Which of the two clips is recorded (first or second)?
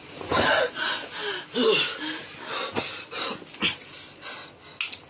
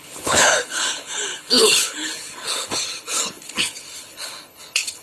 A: first